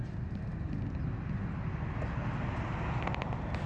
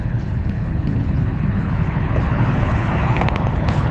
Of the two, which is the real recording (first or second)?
first